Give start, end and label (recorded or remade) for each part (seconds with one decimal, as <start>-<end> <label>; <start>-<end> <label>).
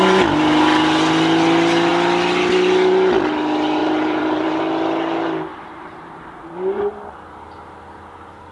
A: 0.0-3.8 recorded; 3.8-4.6 remade; 4.6-5.5 recorded; 5.5-7.3 remade; 7.3-8.5 recorded